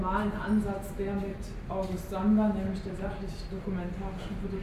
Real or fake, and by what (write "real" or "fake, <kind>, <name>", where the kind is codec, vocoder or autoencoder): real